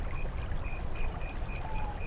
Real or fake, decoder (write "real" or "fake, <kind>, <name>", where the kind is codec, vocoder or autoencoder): real